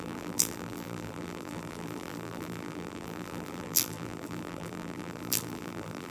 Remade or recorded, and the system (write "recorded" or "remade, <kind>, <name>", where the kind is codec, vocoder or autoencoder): remade, vocoder, BigVGAN v2